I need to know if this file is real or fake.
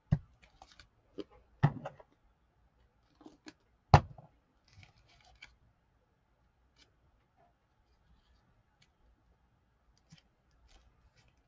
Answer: real